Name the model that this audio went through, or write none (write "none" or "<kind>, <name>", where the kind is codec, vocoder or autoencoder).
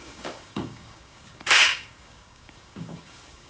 codec, DAC